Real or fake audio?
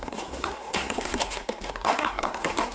fake